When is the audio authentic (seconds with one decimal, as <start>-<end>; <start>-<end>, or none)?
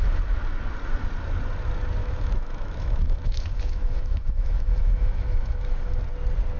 0.0-2.0; 6.0-6.6